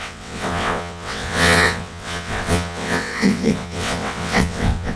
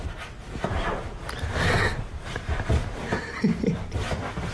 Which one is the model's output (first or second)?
first